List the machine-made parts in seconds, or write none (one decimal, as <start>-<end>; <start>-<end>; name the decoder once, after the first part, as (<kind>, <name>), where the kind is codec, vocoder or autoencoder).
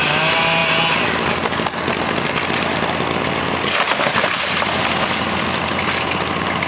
none